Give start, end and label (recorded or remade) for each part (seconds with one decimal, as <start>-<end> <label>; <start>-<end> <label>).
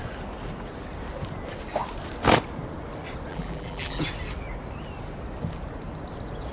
0.0-3.3 recorded; 3.3-4.0 remade; 4.0-6.5 recorded